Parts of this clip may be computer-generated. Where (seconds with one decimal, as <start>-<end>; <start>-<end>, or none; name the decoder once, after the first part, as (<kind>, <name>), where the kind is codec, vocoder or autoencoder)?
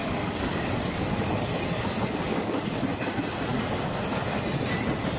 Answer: 0.0-3.1 (codec, DAC); 3.5-4.4